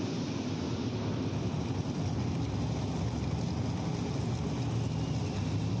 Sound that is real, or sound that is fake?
real